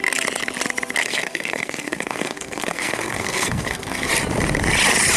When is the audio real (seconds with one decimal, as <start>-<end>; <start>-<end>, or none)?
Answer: 0.0-1.0; 4.1-5.2